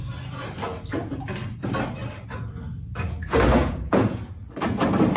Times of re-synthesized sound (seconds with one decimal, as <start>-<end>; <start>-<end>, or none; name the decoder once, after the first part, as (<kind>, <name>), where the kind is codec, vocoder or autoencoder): 3.6-4.3 (vocoder, Vocos)